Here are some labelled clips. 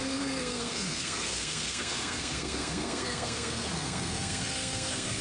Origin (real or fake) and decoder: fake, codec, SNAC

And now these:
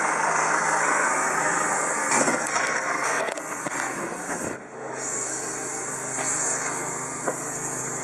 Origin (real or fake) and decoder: fake, codec, SNAC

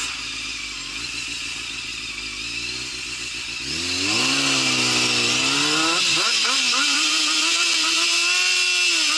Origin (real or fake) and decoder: real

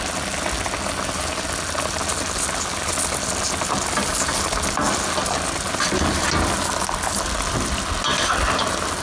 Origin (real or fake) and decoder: real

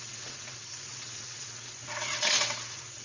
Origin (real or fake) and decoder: fake, vocoder, WaveNeXt